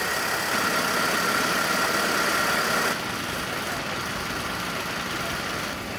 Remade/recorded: recorded